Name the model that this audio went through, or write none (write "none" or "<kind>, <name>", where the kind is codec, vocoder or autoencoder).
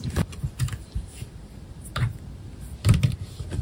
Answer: vocoder, BigVGAN v2